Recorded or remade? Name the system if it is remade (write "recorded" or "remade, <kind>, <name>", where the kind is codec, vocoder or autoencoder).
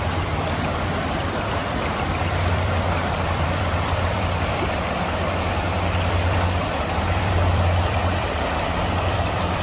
remade, vocoder, BigVGAN v2